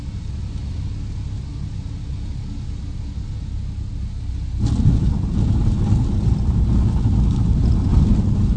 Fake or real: real